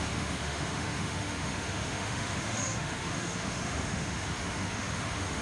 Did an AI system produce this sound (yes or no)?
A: yes